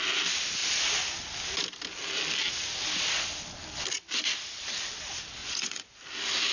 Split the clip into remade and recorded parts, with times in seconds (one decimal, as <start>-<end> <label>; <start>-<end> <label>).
0.0-5.4 recorded; 5.4-6.0 remade; 6.0-6.5 recorded